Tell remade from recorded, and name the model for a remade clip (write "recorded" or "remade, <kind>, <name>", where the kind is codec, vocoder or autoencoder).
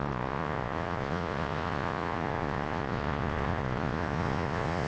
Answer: remade, vocoder, Vocos